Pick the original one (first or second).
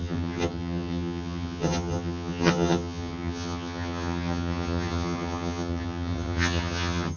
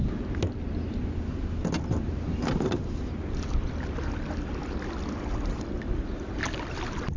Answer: second